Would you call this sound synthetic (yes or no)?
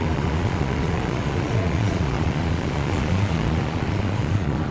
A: yes